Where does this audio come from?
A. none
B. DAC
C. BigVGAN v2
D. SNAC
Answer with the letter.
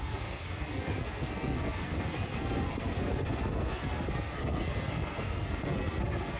D